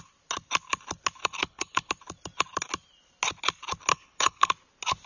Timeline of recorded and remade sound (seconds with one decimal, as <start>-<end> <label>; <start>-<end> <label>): 0.0-1.2 recorded; 1.2-1.9 remade; 1.9-3.9 recorded; 3.9-4.5 remade; 4.5-5.1 recorded